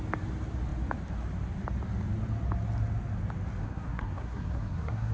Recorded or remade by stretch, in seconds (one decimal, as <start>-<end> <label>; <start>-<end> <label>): 0.0-3.6 recorded; 3.6-5.1 remade